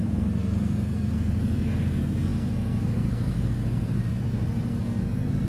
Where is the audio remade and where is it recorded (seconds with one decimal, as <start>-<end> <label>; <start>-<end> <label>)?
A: 0.0-5.5 remade